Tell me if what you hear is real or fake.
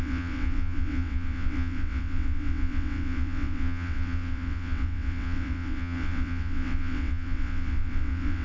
fake